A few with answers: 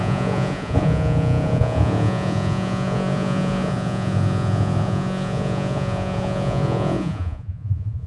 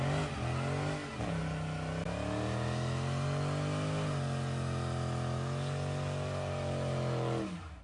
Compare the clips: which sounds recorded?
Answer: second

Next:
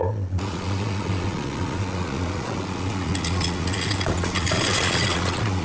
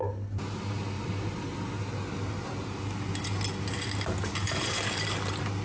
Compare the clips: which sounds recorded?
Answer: second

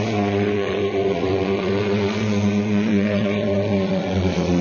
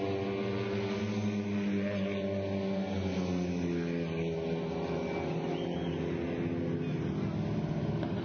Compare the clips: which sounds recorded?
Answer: second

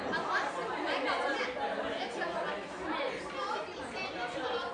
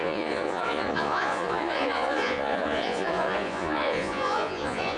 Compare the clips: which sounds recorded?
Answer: first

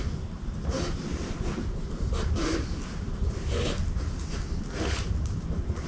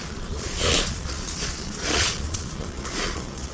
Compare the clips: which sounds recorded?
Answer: first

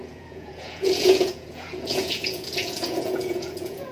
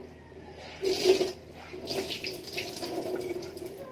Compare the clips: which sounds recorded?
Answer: second